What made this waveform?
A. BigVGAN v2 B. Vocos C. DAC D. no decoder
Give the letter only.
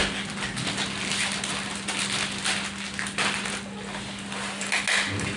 D